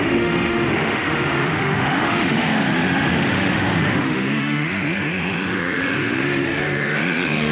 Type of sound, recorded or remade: remade